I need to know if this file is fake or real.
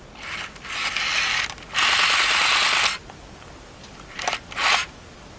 real